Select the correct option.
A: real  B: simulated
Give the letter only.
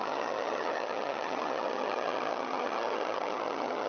B